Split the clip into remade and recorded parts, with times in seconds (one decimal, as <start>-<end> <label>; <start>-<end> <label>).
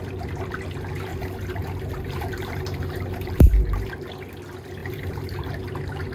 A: 0.0-1.1 recorded; 1.1-3.9 remade; 3.9-4.8 recorded; 4.8-5.5 remade; 5.5-6.1 recorded